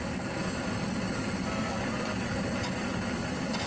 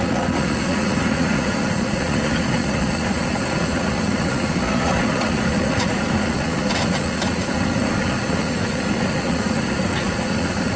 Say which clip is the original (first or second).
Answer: first